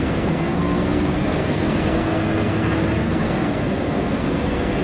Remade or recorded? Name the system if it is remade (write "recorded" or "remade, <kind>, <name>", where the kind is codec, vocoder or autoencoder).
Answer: remade, codec, SNAC